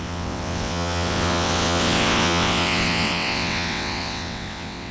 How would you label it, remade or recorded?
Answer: remade